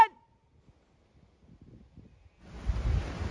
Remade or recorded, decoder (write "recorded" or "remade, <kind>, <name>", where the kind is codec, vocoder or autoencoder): recorded